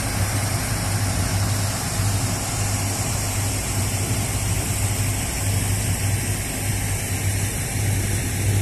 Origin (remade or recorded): recorded